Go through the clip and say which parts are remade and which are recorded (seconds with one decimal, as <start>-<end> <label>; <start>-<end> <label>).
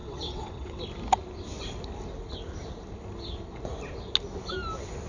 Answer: 0.0-0.8 remade; 0.8-5.1 recorded